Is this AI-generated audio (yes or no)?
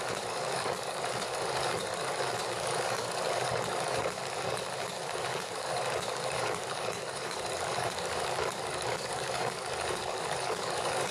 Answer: yes